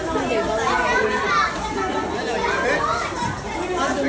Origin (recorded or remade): recorded